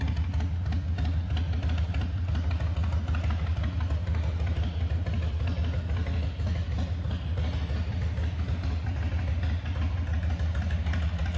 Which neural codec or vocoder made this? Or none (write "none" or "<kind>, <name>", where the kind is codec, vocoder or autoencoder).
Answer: none